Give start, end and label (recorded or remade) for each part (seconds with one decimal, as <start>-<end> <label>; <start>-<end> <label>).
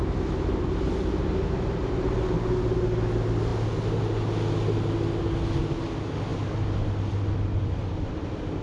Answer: 0.0-8.6 recorded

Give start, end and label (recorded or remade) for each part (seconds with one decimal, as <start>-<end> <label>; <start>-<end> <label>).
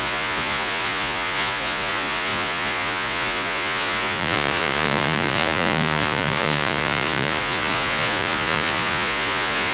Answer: 0.0-9.7 remade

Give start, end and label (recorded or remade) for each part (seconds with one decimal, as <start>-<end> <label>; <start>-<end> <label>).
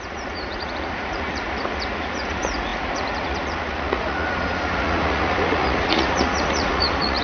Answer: 0.0-7.2 remade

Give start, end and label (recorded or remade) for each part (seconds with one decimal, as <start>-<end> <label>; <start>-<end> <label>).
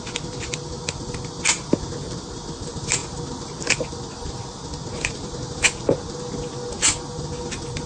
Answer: 0.0-7.9 recorded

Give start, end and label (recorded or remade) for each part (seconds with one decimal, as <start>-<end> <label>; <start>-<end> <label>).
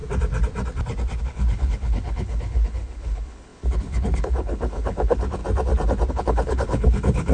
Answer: 0.0-1.2 recorded; 1.2-5.4 remade; 5.4-6.1 recorded; 6.1-7.3 remade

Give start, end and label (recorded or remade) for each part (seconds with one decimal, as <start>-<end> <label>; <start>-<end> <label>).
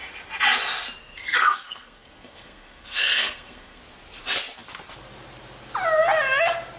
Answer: 0.0-1.0 recorded; 1.0-3.8 remade; 3.8-6.8 recorded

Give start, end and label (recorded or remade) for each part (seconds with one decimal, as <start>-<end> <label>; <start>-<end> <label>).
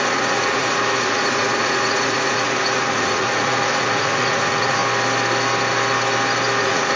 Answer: 0.0-4.8 remade; 4.8-6.6 recorded; 6.6-7.0 remade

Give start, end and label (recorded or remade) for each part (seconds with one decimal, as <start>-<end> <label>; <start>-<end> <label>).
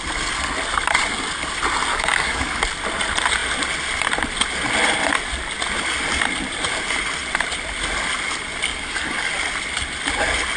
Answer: 0.0-1.9 recorded; 1.9-2.6 remade; 2.6-8.7 recorded; 8.7-9.3 remade; 9.3-10.6 recorded